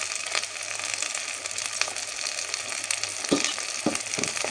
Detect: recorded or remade recorded